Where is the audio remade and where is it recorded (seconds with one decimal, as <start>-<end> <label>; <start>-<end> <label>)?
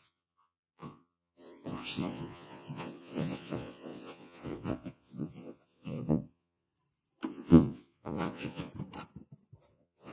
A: 0.0-6.7 remade; 6.7-7.3 recorded; 7.3-8.7 remade; 8.7-9.7 recorded; 9.7-10.1 remade